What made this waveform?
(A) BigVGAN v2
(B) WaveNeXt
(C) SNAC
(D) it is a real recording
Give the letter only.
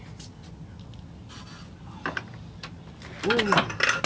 D